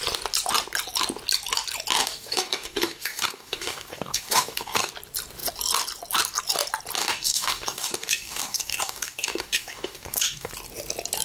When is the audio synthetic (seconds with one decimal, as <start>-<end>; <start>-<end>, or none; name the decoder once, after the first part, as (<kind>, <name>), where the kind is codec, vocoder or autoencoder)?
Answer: 2.0-4.9 (codec, DAC); 7.0-10.5